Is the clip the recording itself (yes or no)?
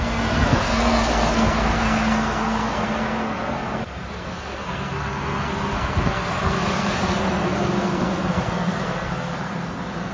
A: no